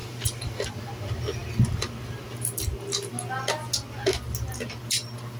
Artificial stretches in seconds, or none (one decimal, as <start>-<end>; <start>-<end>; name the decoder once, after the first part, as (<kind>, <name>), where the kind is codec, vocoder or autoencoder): 0.0-0.7 (vocoder, BigVGAN v2)